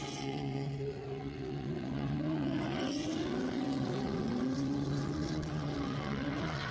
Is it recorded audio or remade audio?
remade